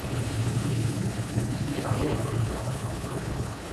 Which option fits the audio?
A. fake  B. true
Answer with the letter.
A